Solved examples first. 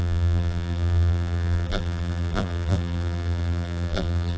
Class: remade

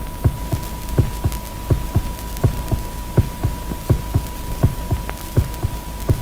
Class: recorded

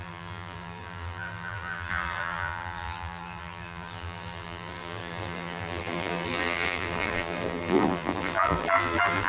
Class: remade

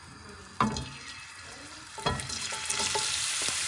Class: recorded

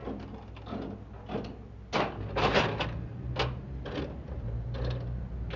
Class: recorded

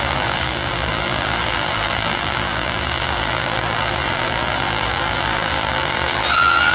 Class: remade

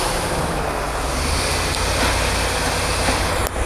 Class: recorded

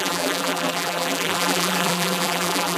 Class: remade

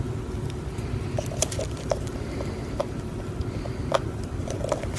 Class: remade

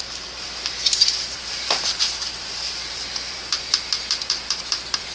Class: remade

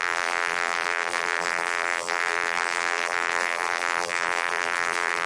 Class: remade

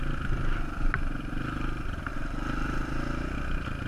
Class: recorded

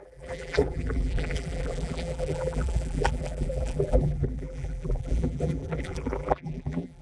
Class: remade